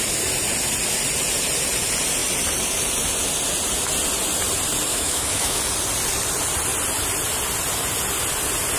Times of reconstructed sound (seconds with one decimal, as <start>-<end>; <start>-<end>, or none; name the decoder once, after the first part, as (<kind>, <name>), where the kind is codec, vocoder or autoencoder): 4.9-5.6 (autoencoder, DAC-VAE)